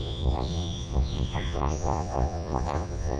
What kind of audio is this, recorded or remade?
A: remade